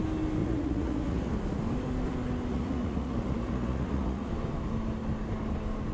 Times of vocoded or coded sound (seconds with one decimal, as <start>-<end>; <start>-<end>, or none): 0.4-1.3; 2.5-4.3